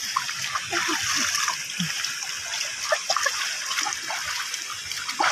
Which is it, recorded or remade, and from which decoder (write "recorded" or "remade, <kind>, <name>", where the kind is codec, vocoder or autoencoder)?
recorded